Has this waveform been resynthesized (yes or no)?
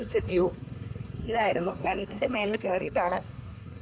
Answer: yes